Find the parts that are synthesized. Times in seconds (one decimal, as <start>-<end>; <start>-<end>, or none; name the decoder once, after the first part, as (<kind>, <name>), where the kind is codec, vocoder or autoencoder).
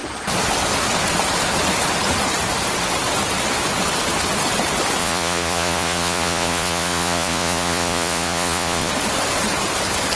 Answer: 5.0-8.9 (vocoder, Vocos)